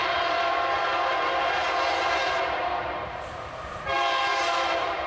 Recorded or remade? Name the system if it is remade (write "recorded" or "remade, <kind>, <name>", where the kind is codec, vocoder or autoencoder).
remade, vocoder, BigVGAN v2